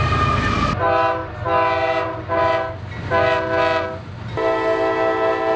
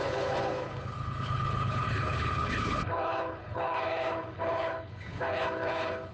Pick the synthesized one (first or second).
second